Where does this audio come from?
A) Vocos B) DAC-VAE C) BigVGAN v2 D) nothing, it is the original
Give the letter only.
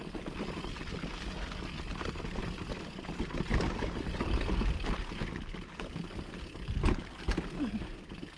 D